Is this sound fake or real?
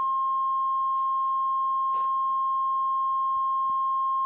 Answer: real